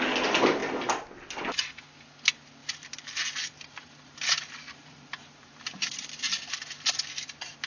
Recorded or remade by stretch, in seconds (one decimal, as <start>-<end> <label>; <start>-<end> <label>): 0.0-2.6 recorded; 2.6-6.1 remade; 6.1-7.7 recorded